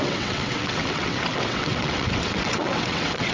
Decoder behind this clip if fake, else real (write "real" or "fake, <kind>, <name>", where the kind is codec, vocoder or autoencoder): fake, vocoder, WaveNeXt